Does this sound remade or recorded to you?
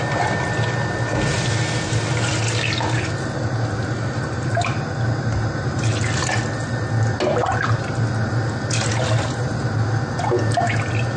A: recorded